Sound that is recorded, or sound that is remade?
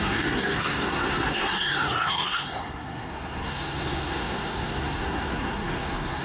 remade